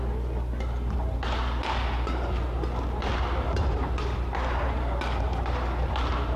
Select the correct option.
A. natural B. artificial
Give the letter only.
A